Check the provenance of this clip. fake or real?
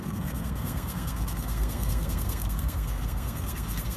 fake